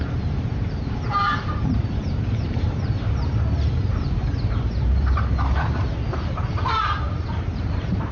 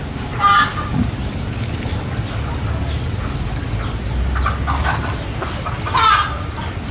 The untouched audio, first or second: second